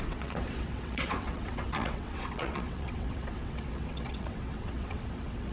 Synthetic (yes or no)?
yes